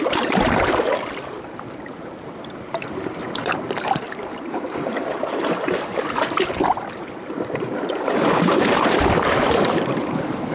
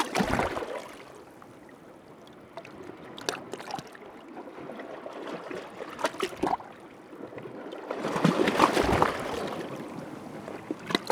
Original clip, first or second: second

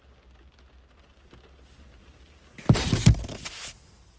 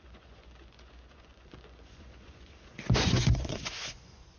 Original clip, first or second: first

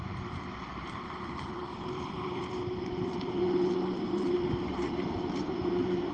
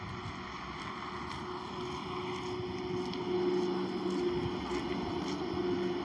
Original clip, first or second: second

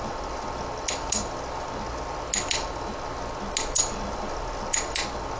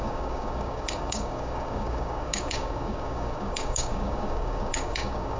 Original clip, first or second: first